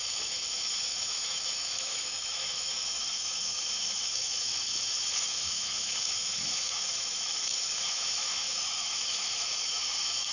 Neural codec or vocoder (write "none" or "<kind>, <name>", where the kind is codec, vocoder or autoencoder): autoencoder, DAC-VAE